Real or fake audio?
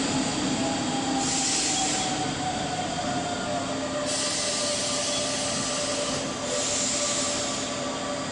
real